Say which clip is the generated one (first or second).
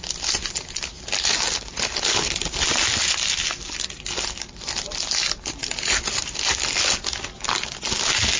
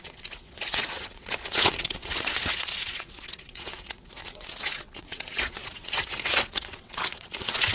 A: second